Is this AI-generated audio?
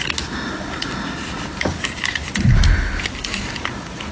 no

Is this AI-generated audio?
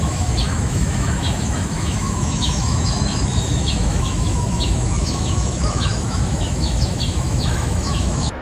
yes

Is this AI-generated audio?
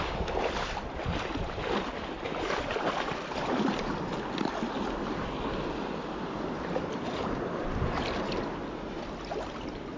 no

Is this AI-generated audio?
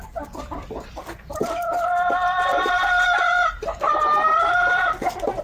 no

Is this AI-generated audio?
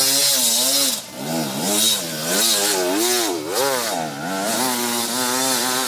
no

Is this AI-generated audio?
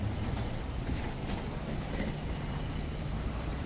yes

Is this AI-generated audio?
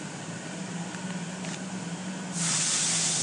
no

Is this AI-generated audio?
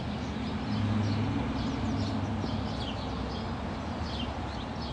no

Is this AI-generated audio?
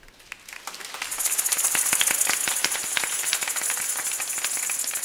no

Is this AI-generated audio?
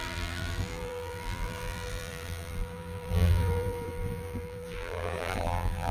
yes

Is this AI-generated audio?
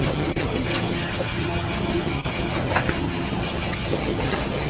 yes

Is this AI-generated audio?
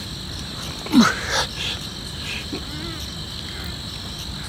no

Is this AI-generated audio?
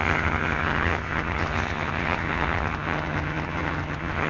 yes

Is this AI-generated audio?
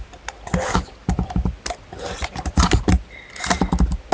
no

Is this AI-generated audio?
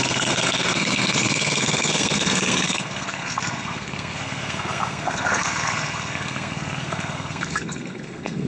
yes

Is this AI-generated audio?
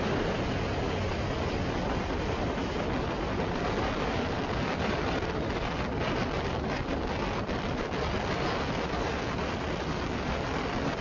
no